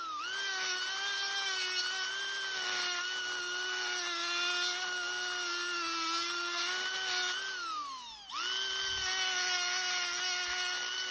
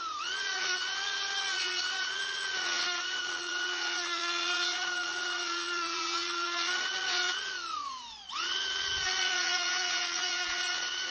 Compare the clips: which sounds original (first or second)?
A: first